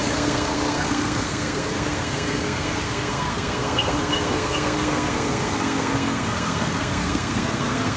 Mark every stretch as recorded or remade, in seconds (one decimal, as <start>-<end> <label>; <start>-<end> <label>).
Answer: 0.0-8.0 remade